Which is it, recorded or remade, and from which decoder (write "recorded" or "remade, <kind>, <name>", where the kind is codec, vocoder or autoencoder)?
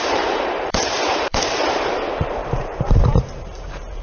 remade, vocoder, BigVGAN v2